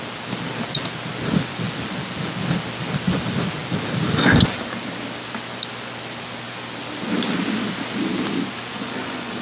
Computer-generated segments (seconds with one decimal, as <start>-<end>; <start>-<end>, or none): 8.7-9.4